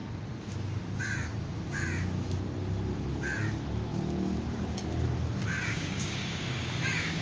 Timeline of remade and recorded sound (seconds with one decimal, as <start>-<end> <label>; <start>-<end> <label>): 0.0-5.7 recorded; 5.7-7.2 remade